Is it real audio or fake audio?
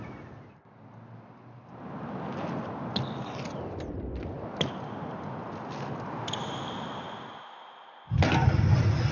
real